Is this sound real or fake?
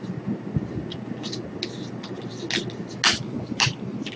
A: real